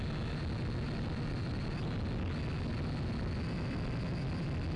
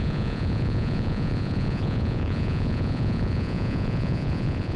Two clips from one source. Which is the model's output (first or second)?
second